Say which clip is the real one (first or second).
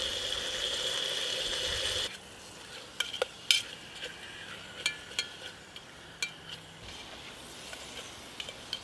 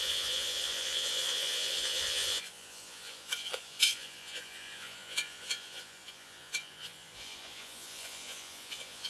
first